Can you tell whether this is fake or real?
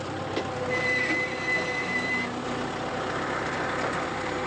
real